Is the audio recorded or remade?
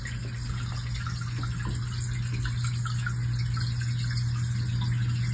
recorded